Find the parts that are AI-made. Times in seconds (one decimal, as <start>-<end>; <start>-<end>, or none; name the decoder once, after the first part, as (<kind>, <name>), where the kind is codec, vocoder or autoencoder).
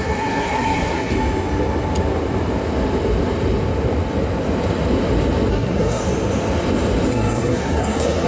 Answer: 0.0-1.1 (codec, SNAC); 5.5-6.0; 7.1-8.3